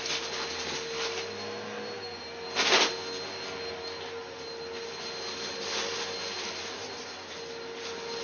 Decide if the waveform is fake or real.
real